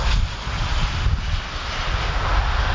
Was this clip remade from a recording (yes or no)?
no